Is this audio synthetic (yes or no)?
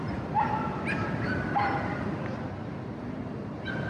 no